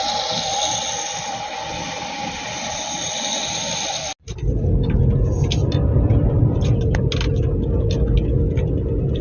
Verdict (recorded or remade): recorded